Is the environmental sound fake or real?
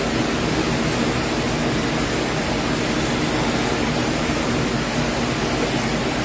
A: real